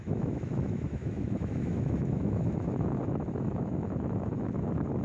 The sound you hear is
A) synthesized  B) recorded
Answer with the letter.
A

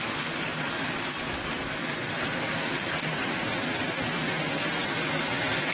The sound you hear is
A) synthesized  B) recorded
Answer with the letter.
B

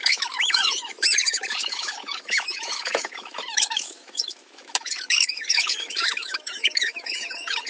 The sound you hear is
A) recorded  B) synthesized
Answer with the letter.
B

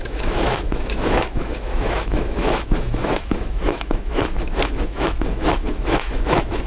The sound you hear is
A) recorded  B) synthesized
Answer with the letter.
B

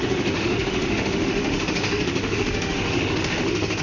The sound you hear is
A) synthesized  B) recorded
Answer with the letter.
A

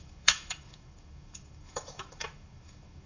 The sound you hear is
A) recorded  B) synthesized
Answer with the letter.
B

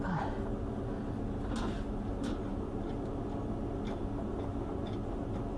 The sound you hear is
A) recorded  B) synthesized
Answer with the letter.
A